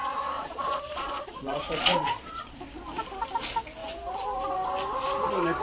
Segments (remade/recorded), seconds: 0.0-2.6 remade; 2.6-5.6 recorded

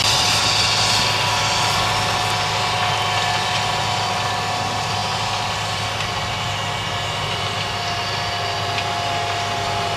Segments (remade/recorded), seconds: 0.0-10.0 recorded

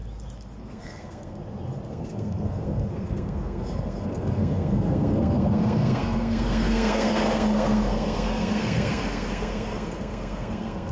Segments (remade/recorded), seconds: 0.0-0.6 recorded; 0.6-1.4 remade; 1.4-1.9 recorded; 1.9-10.9 remade

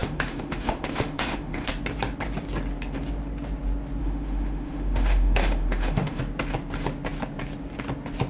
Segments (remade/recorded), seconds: 0.0-1.7 remade; 1.7-4.0 recorded; 4.0-6.2 remade; 6.2-8.3 recorded